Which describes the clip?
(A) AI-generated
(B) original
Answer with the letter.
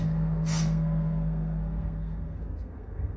A